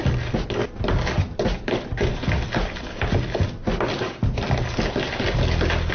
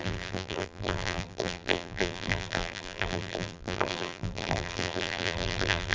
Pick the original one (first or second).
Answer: first